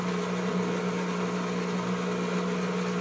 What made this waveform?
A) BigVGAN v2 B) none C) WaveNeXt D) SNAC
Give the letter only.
B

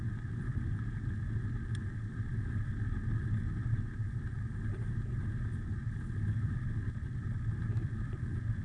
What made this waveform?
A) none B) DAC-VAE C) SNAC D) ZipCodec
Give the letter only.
A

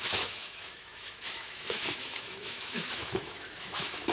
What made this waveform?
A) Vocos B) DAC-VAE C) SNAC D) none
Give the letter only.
B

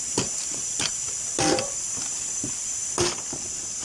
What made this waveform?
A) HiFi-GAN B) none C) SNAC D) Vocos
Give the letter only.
B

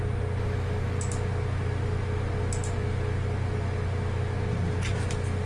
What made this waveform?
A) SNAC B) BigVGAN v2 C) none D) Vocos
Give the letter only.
C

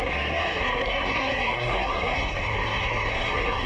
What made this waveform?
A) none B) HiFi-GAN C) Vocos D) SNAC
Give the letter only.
D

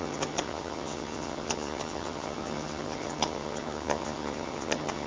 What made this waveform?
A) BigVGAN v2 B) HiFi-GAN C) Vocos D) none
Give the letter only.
B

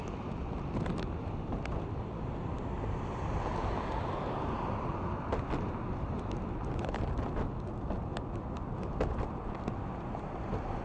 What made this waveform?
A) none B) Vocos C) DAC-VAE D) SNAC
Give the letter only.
A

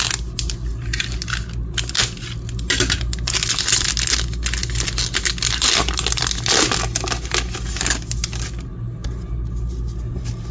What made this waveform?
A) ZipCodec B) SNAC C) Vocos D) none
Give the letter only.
D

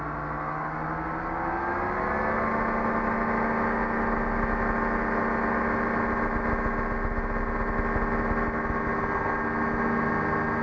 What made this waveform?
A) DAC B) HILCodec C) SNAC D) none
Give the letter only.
D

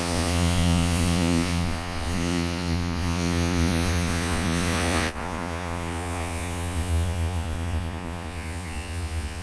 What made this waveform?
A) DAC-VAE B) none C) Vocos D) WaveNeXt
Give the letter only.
C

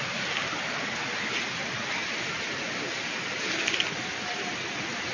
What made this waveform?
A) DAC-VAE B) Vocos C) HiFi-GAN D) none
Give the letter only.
D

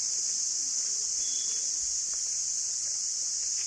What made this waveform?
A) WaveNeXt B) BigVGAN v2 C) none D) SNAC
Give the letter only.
C